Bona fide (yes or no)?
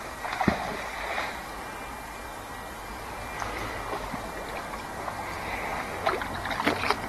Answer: yes